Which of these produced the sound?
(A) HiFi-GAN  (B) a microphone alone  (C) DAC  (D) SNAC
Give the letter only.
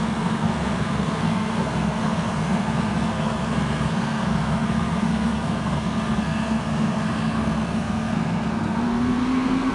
D